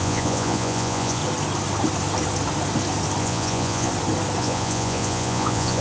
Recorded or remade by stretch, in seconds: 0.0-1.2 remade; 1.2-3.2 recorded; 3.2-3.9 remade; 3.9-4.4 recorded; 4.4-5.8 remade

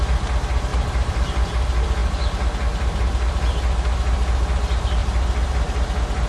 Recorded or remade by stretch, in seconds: 0.0-0.7 recorded; 0.7-1.5 remade; 1.5-6.3 recorded

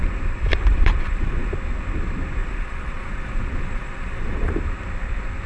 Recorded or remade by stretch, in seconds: 0.0-0.7 recorded; 0.7-1.5 remade; 1.5-2.4 recorded; 2.4-4.5 remade; 4.5-5.5 recorded

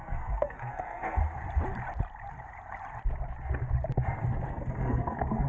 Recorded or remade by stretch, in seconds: 0.0-1.2 remade; 1.2-4.5 recorded; 4.5-5.5 remade

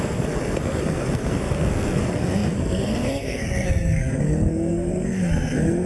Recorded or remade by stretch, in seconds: 0.0-5.9 remade

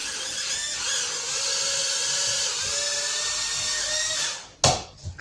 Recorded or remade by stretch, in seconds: 0.0-1.8 recorded; 1.8-2.7 remade; 2.7-5.2 recorded

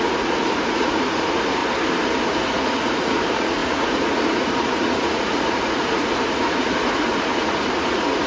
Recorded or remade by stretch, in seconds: 0.0-1.6 remade; 1.6-2.4 recorded; 2.4-8.3 remade